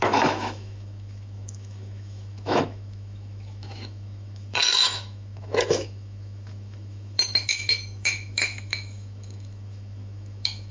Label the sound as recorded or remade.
remade